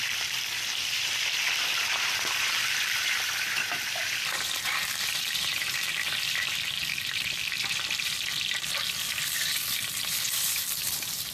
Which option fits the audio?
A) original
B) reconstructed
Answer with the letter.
B